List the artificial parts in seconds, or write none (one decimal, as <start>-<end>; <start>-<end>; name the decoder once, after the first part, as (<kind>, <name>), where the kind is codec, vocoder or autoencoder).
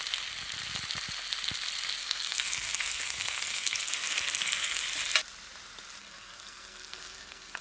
2.0-4.8 (codec, SNAC); 6.0-7.6